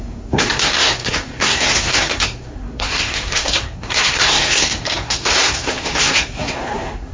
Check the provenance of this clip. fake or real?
fake